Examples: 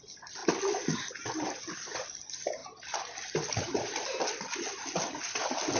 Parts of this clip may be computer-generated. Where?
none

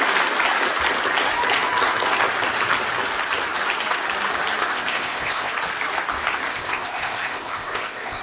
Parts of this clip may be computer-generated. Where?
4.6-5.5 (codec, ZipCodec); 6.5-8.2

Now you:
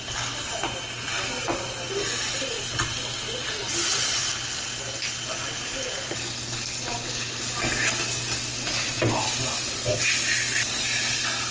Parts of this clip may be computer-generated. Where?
none

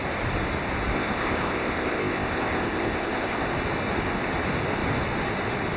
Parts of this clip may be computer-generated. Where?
0.9-3.4 (codec, ZipCodec)

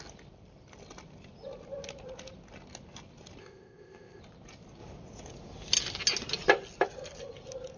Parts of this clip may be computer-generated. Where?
3.4-4.2 (codec, ZipCodec)

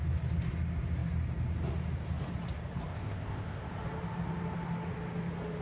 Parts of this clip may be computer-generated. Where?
2.9-3.6 (codec, ZipCodec)

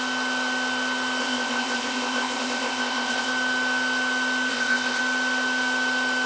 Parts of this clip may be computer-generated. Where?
1.2-3.3 (codec, ZipCodec); 4.5-5.0

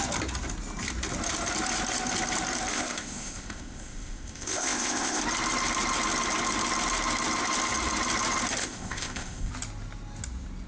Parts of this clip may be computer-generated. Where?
2.7-5.2 (codec, ZipCodec); 8.6-9.5